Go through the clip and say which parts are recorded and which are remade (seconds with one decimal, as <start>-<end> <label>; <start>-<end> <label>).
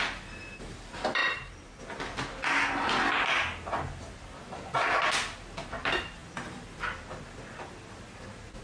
0.0-1.2 recorded; 1.2-1.8 remade; 1.8-8.6 recorded